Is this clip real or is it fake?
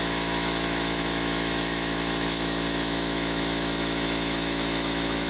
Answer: fake